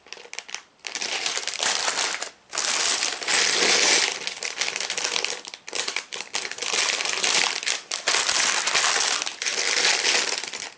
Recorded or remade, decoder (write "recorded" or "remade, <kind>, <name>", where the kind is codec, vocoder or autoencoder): remade, vocoder, BigVGAN v2